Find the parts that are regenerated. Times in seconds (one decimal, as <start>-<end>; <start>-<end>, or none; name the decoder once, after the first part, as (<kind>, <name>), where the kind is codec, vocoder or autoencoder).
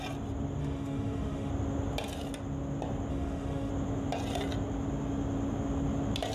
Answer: 0.6-1.5 (autoencoder, DAC-VAE); 3.1-3.7